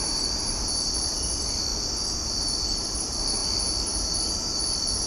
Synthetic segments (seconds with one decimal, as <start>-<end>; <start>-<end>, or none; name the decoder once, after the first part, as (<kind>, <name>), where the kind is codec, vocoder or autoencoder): 0.0-1.7 (vocoder, BigVGAN v2); 3.0-3.4; 4.2-5.1